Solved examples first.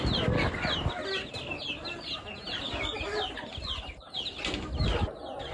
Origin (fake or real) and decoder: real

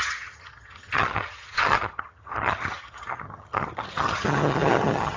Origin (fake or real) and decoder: fake, vocoder, HiFi-GAN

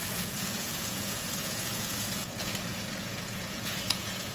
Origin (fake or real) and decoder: fake, vocoder, Vocos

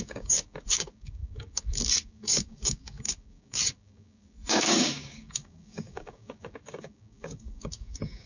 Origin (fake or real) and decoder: fake, codec, DAC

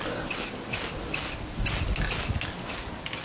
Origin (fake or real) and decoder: real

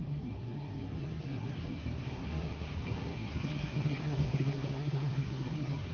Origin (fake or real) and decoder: fake, codec, SNAC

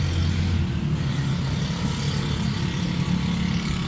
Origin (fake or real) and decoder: real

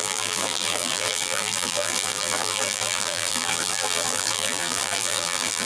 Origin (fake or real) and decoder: fake, vocoder, BigVGAN v2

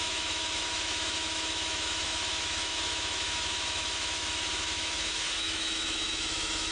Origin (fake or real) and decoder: fake, autoencoder, DAC-VAE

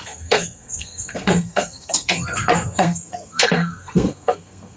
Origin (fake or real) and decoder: fake, codec, SNAC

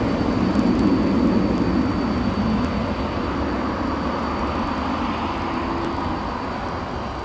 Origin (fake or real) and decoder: real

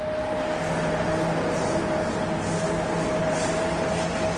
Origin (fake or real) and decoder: real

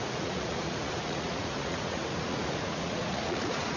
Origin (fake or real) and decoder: fake, vocoder, Vocos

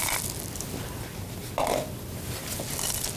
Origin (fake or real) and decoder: real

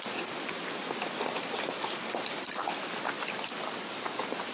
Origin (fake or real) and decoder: real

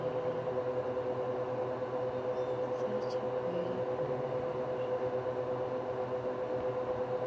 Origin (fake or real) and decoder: real